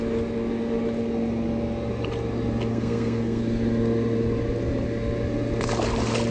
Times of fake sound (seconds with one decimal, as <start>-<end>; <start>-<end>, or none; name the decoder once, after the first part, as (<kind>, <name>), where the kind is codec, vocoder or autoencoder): 2.7-3.4 (codec, SNAC)